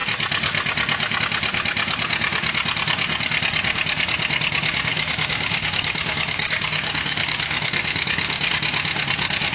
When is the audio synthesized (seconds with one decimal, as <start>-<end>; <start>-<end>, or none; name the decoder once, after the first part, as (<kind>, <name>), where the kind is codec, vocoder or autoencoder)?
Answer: 4.9-8.5 (codec, DAC)